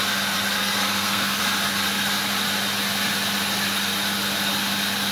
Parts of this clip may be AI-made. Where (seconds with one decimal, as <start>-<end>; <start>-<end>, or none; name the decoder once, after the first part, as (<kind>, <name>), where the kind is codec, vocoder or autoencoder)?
0.6-1.4 (codec, SNAC)

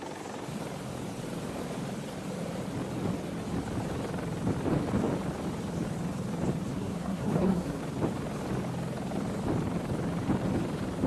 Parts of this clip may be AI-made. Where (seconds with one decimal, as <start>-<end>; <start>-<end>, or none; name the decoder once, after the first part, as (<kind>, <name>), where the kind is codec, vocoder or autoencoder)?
6.7-7.8 (codec, SNAC)

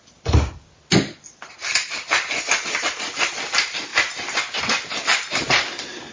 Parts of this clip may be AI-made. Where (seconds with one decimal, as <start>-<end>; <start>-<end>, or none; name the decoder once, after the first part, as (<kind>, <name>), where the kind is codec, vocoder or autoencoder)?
none

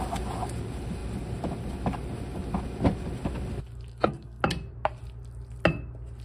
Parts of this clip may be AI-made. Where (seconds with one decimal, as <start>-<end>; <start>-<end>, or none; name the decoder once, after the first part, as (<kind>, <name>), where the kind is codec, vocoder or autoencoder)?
3.9-4.4 (codec, SNAC)

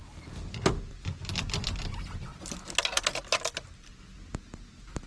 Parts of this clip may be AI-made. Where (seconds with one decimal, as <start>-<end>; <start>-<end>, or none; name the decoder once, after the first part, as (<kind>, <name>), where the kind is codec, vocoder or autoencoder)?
none